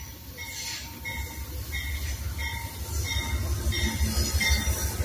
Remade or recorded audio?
recorded